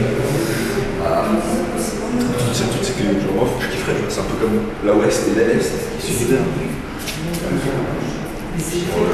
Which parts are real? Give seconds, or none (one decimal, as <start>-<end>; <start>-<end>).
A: 0.0-4.8; 6.2-7.4; 8.3-9.1